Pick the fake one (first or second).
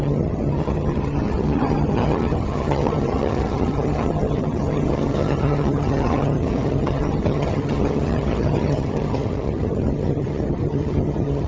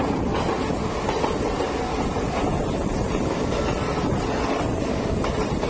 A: first